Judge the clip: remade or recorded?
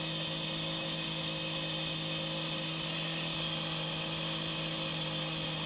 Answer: recorded